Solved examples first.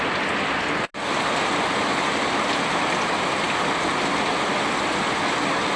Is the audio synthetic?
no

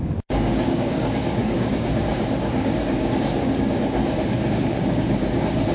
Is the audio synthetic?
yes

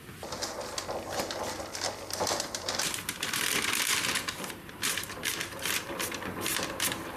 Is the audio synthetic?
yes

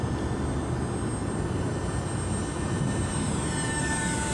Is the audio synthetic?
no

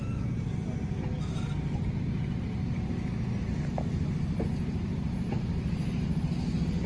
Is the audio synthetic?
no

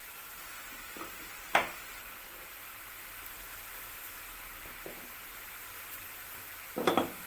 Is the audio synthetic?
no